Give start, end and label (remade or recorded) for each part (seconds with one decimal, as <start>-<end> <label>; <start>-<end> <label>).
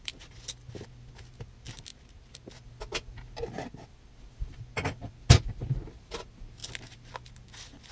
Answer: 0.0-7.9 recorded